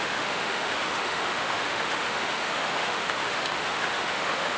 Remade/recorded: remade